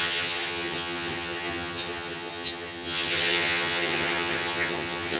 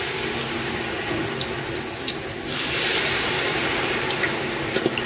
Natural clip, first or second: second